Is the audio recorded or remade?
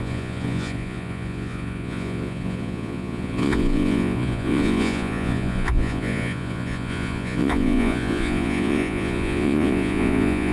remade